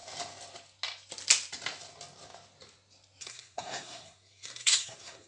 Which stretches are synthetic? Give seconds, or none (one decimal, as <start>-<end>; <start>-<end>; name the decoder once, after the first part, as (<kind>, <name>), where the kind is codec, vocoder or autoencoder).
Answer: 3.2-5.3 (codec, SNAC)